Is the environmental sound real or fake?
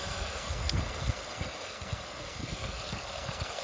fake